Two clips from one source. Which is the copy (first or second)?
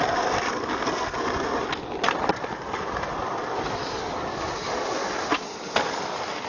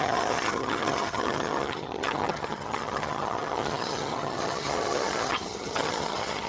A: second